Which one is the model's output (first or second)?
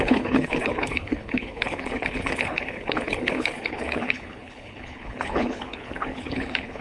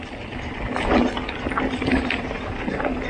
first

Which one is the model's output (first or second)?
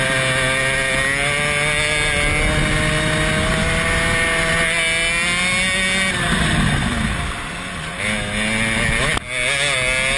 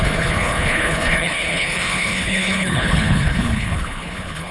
second